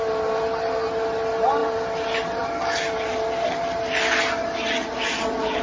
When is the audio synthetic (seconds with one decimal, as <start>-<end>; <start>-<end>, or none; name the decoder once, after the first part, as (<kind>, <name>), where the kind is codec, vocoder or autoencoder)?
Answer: none